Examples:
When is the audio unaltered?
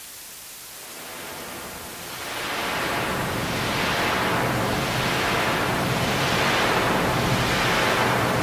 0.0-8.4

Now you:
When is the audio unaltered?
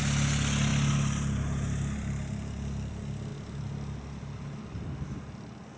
0.0-5.8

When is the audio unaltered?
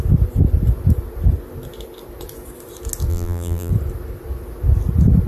0.0-3.1; 3.7-5.3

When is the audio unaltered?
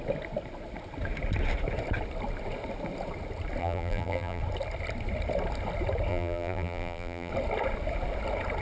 0.0-3.6; 4.4-6.1; 7.3-8.6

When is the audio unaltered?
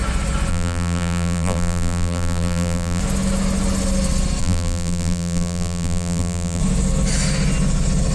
0.0-0.5; 3.0-4.4; 6.6-8.1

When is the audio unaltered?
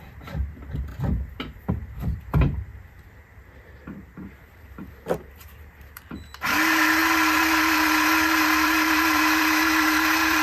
0.9-1.7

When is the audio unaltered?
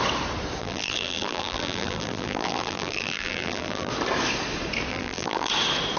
0.0-0.6; 3.9-4.9; 5.5-6.0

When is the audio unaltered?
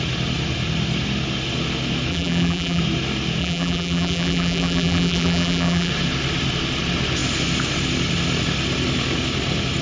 0.0-2.1; 2.8-3.4; 5.9-9.8